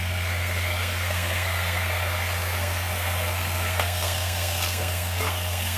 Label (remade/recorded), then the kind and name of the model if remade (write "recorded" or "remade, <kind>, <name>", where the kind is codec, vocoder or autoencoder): remade, codec, SNAC